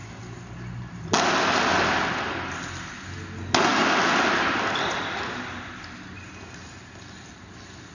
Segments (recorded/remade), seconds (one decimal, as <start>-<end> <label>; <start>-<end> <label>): 0.0-7.9 recorded